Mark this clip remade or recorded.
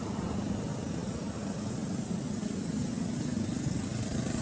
recorded